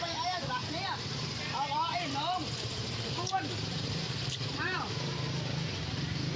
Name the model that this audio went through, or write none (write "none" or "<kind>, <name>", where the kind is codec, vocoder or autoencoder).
vocoder, BigVGAN v2